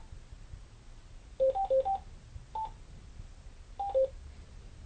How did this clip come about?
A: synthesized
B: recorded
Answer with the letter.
B